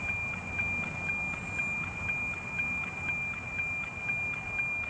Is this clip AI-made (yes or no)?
no